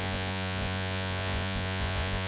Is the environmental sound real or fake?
fake